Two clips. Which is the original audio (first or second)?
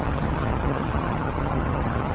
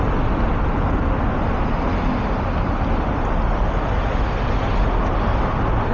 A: second